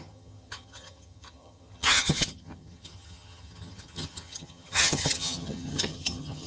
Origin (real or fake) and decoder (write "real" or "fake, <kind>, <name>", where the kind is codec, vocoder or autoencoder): fake, vocoder, HiFi-GAN